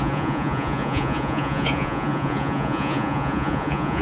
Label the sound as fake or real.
fake